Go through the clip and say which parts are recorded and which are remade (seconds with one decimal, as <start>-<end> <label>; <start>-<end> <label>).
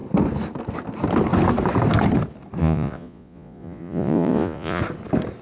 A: 0.0-2.6 recorded; 2.6-4.8 remade; 4.8-5.4 recorded